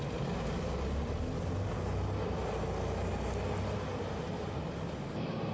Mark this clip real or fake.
real